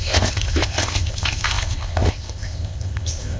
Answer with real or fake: fake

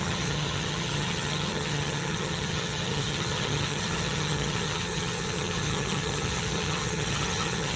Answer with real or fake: fake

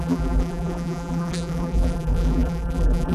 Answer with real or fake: fake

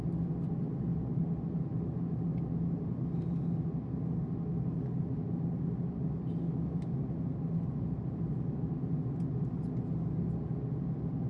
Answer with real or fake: real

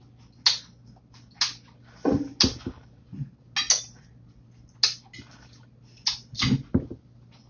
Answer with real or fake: real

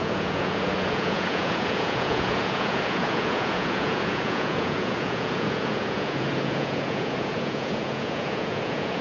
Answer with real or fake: fake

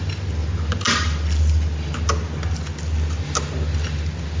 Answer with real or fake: real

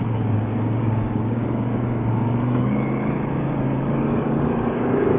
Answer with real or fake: fake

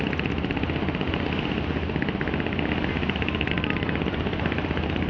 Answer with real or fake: real